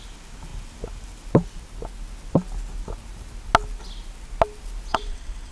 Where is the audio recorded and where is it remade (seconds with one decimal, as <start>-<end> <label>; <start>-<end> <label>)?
0.0-4.9 recorded; 4.9-5.5 remade